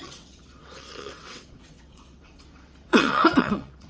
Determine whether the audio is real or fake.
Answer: fake